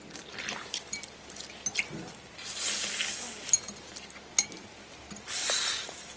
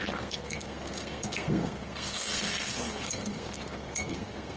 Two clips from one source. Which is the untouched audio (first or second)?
first